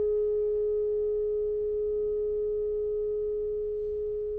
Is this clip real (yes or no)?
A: yes